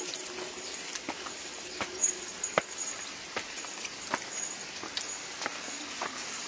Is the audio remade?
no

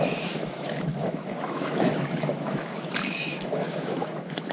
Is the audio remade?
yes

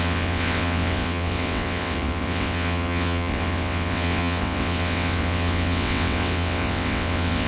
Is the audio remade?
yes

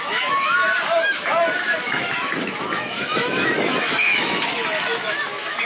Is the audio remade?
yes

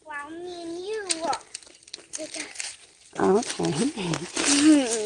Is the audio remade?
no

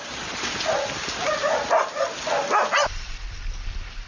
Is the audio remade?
no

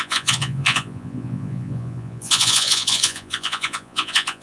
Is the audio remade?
yes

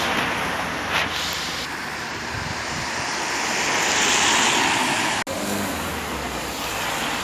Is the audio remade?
no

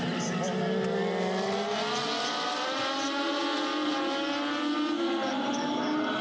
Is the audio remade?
no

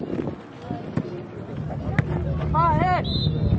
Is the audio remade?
no